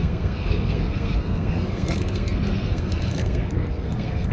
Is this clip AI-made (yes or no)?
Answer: yes